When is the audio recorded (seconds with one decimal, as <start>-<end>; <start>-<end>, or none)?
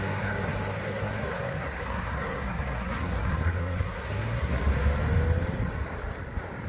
4.7-6.7